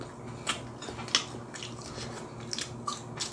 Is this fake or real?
real